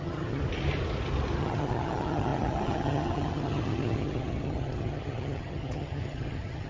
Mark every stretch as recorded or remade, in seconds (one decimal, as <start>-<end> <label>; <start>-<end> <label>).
0.0-0.4 remade; 0.4-1.4 recorded; 1.4-6.7 remade